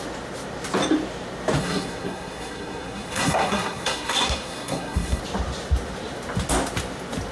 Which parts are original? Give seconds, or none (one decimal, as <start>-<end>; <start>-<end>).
0.0-1.6; 5.2-7.3